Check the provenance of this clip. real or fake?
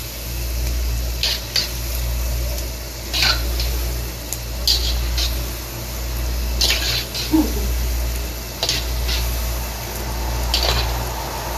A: real